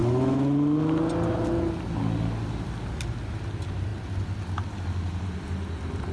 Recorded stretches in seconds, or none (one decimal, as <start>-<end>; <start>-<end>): 0.0-6.1